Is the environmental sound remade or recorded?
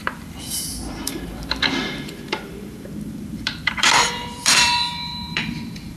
remade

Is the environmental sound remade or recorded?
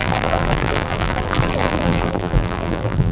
remade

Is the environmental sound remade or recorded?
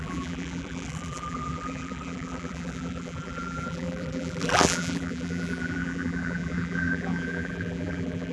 remade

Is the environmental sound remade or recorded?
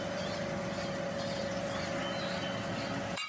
recorded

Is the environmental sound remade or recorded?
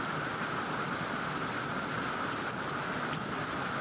recorded